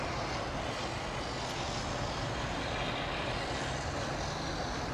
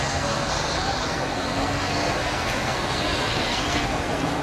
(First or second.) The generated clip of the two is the second